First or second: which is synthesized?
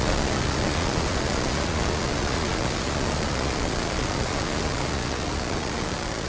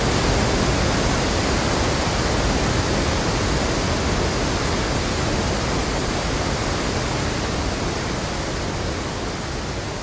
first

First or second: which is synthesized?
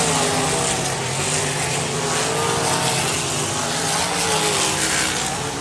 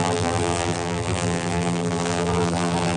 second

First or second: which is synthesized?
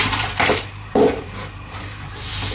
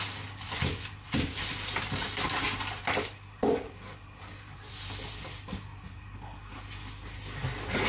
first